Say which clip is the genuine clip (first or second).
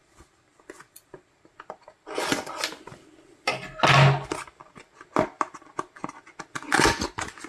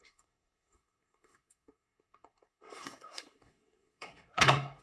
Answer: first